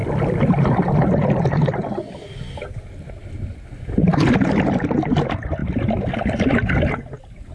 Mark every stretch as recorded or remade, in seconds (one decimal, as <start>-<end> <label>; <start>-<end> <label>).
0.0-0.7 remade; 0.7-7.5 recorded